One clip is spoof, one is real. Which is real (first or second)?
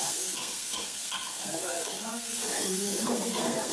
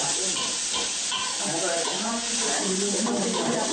second